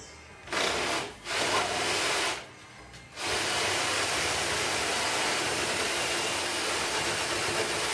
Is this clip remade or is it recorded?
recorded